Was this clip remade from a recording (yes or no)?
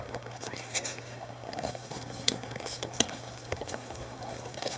yes